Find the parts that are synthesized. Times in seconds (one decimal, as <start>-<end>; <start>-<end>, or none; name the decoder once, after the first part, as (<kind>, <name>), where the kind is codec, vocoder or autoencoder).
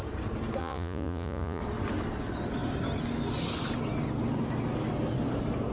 0.6-1.6 (vocoder, Vocos)